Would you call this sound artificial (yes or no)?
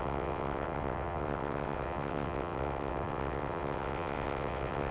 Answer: yes